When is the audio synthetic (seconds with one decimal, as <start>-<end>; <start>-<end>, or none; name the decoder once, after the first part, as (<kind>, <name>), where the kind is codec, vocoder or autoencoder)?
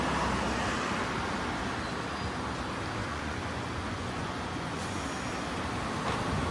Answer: 3.0-5.0 (vocoder, Vocos)